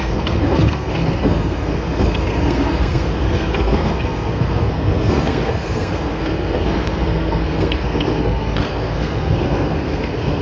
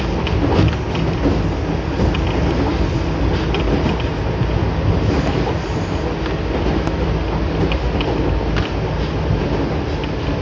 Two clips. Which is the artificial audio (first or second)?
first